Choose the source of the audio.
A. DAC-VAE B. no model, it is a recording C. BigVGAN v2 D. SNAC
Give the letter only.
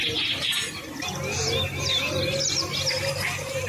B